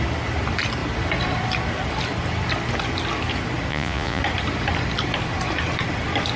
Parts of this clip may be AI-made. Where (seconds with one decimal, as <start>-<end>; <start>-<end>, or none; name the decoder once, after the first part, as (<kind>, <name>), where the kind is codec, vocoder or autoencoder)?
3.7-4.2 (vocoder, Vocos)